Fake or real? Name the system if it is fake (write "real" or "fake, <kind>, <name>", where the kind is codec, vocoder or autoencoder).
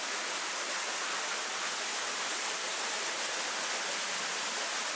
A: real